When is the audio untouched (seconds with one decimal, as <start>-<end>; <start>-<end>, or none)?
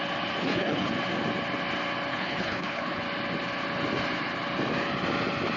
0.0-0.4; 0.9-2.1; 3.0-5.6